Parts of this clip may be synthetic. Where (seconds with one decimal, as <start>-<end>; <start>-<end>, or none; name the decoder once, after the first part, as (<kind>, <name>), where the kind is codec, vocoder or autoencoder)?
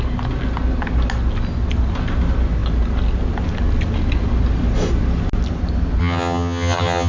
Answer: 6.0-7.1 (vocoder, HiFi-GAN)